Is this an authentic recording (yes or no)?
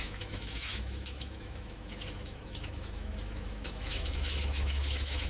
no